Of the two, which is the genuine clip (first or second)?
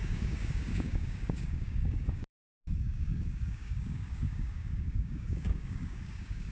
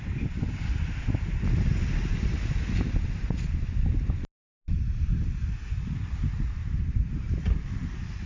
second